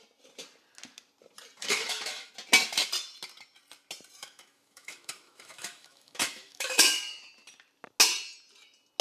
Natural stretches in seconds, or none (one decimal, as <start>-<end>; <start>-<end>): 0.0-1.6; 2.3-4.2; 6.9-9.0